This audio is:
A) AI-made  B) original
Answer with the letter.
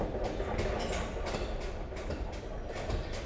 B